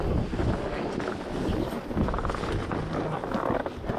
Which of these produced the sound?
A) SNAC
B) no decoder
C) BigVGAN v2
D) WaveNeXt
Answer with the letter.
B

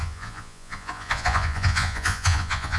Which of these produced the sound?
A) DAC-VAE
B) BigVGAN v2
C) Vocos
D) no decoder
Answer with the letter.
C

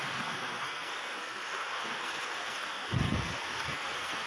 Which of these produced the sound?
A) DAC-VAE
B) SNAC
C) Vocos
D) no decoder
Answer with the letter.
B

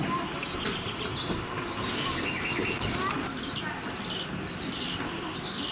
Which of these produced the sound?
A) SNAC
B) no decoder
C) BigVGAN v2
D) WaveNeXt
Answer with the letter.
B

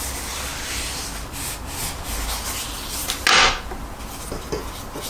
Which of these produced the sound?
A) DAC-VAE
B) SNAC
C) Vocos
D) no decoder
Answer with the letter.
D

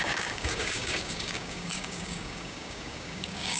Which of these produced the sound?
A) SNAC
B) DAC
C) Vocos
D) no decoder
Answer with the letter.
B